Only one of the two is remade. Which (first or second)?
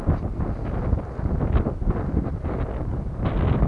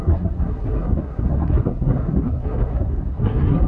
second